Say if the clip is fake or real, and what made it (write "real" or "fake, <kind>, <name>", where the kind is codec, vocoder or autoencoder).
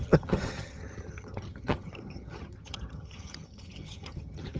fake, vocoder, HiFi-GAN